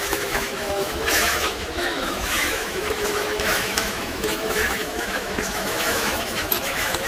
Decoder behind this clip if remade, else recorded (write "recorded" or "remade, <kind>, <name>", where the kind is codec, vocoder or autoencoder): remade, autoencoder, DAC-VAE